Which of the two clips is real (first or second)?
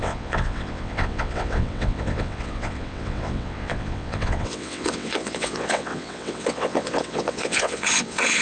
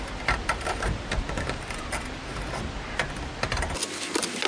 second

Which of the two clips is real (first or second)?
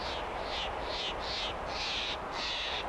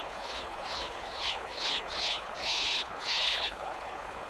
first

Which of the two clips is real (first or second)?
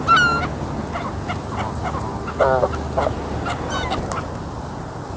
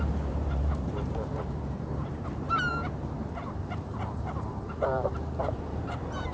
first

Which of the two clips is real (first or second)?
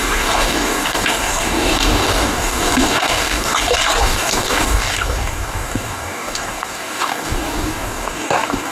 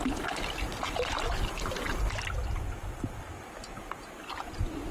second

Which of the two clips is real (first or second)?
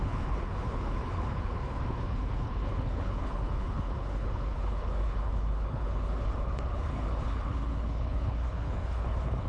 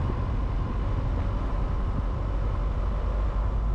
second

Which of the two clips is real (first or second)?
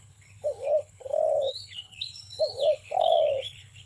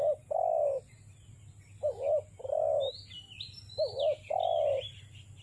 second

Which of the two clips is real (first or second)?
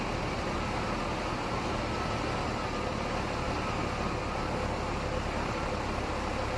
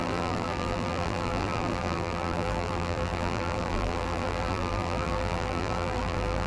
first